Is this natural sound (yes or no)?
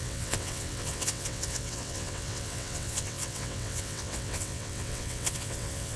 no